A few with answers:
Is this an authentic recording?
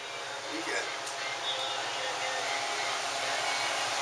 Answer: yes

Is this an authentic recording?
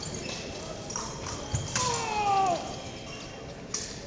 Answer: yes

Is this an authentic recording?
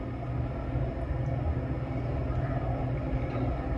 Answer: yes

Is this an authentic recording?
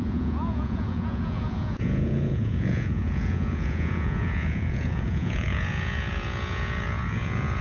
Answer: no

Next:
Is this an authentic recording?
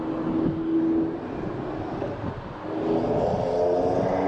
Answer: yes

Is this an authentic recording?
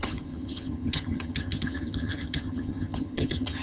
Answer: no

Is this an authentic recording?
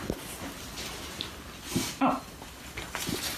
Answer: yes